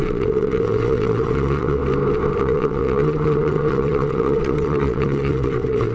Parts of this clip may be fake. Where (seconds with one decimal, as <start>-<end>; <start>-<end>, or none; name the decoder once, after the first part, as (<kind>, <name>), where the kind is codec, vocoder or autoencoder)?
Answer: 0.0-1.8 (vocoder, WaveNeXt); 2.4-5.9